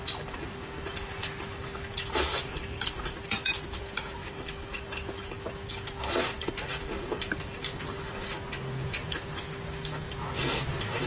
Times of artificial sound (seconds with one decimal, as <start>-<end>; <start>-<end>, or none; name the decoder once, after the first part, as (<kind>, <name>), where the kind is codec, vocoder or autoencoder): 4.2-4.8 (autoencoder, DAC-VAE)